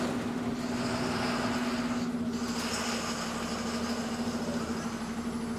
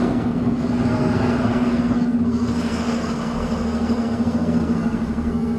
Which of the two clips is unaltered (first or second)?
first